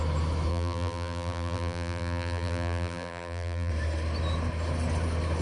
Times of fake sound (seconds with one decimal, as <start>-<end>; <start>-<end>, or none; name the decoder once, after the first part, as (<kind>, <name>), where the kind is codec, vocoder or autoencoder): 0.5-3.7 (vocoder, BigVGAN v2)